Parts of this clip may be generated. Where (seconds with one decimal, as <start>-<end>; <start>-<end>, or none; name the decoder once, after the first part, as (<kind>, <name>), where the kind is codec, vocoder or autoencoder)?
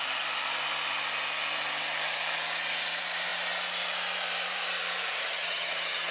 5.2-6.1 (vocoder, HiFi-GAN)